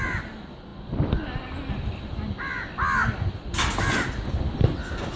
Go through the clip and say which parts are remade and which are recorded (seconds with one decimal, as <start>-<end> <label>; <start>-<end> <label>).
0.0-5.2 recorded